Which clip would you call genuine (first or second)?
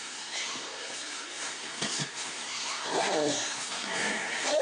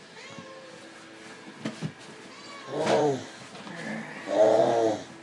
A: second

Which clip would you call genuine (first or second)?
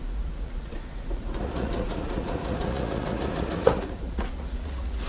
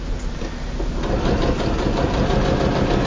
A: second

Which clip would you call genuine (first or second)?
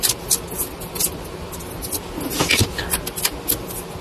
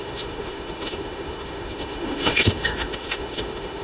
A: first